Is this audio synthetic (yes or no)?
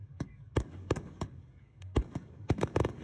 yes